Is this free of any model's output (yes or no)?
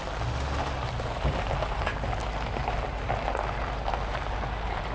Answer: yes